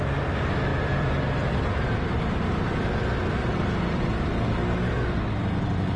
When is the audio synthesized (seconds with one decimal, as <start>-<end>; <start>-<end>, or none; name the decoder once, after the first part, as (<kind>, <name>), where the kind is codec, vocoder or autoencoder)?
0.7-2.2 (vocoder, BigVGAN v2); 3.4-4.3